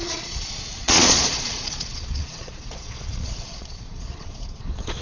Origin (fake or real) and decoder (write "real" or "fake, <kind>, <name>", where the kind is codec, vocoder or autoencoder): fake, vocoder, Vocos